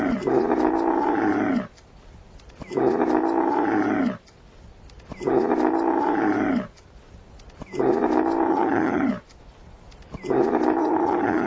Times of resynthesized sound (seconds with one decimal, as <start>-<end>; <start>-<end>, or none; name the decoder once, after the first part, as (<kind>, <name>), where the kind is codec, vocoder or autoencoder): 8.5-9.1 (vocoder, HiFi-GAN); 10.8-11.5